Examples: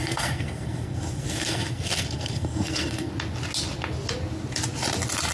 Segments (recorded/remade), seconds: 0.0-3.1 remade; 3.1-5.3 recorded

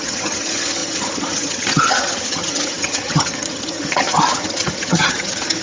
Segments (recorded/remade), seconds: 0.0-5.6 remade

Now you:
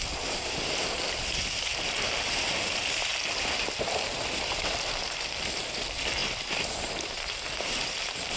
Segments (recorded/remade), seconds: 0.0-1.7 remade; 1.7-2.7 recorded; 2.7-3.1 remade; 3.1-4.2 recorded; 4.2-6.2 remade; 6.2-7.0 recorded; 7.0-8.4 remade

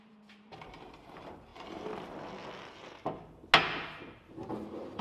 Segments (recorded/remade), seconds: 0.0-1.5 remade; 1.5-4.5 recorded; 4.5-5.0 remade